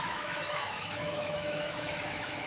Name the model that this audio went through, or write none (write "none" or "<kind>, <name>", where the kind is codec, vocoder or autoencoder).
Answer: autoencoder, DAC-VAE